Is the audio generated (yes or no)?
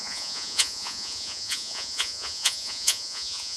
yes